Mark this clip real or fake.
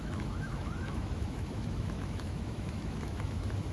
fake